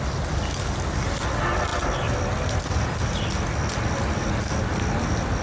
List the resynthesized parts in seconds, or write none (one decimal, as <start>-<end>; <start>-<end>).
none